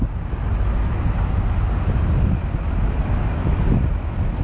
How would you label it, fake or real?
real